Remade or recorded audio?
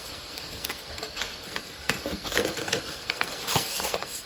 remade